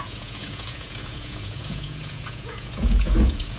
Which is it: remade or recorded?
remade